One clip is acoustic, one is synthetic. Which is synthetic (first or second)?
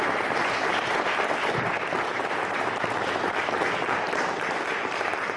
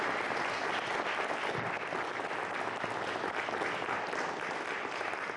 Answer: first